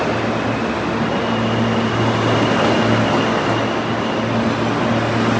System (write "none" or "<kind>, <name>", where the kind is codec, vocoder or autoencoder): none